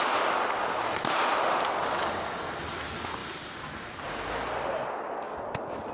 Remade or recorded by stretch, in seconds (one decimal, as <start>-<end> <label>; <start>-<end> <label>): 0.0-5.9 recorded